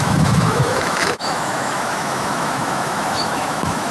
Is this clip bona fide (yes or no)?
no